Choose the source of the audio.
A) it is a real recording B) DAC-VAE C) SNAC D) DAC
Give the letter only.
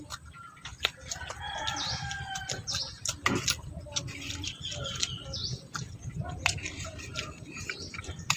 A